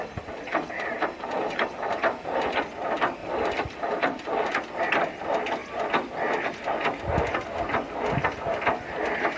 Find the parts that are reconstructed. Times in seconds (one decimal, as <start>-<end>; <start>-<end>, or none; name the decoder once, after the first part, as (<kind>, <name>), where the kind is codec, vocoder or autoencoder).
0.0-2.6 (vocoder, BigVGAN v2); 3.2-4.5